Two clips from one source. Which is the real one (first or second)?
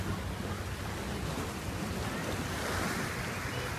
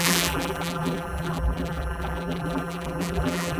first